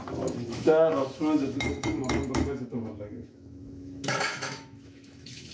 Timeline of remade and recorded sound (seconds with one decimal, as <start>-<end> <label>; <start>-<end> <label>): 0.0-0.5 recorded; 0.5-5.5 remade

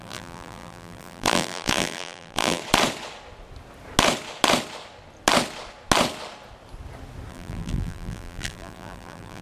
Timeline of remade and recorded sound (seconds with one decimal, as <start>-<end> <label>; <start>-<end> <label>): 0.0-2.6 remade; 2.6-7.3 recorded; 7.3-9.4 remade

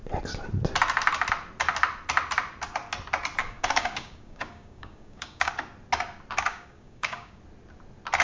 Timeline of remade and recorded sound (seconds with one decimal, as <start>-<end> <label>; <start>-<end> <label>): 0.0-3.4 recorded; 3.4-5.5 remade; 5.5-6.5 recorded; 6.5-7.4 remade; 7.4-8.2 recorded

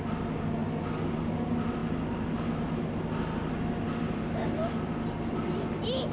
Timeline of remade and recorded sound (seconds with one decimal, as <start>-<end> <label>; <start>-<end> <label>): 0.0-6.1 recorded